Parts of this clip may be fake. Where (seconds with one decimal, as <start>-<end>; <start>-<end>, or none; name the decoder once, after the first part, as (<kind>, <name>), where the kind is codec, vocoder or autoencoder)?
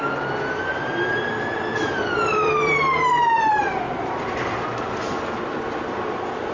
0.7-4.6 (vocoder, BigVGAN v2)